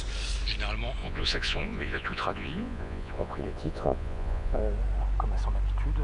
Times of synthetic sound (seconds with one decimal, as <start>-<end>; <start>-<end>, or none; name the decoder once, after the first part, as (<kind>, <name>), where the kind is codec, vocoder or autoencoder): 1.0-4.6 (vocoder, Vocos)